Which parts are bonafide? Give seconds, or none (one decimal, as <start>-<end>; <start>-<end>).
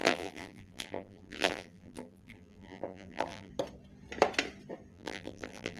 3.5-4.9